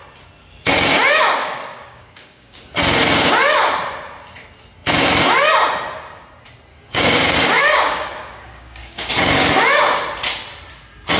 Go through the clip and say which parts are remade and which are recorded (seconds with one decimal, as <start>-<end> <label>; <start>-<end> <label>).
0.0-1.4 recorded; 1.4-2.6 remade; 2.6-6.7 recorded; 6.7-9.1 remade; 9.1-11.2 recorded